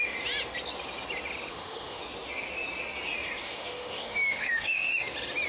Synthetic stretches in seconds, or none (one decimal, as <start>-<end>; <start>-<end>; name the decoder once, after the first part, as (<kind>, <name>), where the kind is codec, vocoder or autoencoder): 1.5-2.0 (autoencoder, DAC-VAE); 3.4-4.9

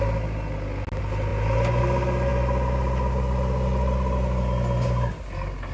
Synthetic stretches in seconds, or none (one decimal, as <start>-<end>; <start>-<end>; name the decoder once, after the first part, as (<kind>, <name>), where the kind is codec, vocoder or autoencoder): none

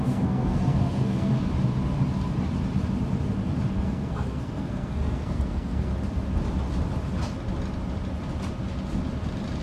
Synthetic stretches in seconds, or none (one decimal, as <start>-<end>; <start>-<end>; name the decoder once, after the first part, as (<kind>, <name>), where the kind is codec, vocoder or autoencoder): 0.0-1.3 (codec, SNAC); 3.7-5.9

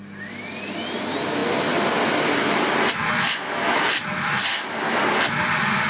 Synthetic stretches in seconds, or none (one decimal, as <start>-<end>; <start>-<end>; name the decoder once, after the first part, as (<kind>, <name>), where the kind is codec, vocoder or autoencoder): none

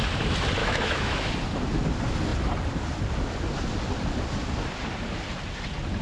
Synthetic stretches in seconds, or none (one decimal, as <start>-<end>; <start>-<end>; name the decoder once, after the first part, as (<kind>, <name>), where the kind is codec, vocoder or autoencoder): 0.6-1.3 (autoencoder, DAC-VAE)

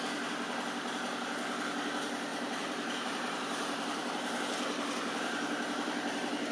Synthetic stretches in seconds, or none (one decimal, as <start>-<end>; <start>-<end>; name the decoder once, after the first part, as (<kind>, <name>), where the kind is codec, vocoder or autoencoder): 2.3-6.5 (vocoder, BigVGAN v2)